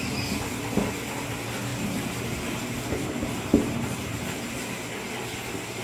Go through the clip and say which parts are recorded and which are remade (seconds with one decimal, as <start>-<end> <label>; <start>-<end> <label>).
0.0-1.7 recorded; 1.7-4.5 remade; 4.5-5.8 recorded